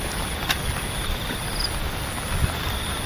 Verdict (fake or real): real